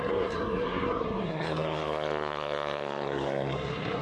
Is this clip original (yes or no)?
no